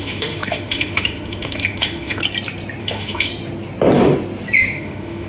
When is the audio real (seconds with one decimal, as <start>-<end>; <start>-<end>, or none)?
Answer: 2.2-2.8; 3.3-4.6